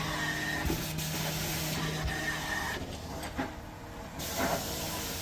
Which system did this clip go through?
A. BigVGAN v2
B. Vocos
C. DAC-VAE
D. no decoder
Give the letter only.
D